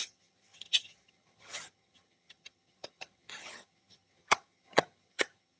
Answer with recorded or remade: remade